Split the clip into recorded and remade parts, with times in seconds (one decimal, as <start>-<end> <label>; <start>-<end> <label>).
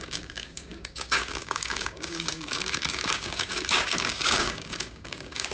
0.0-5.5 remade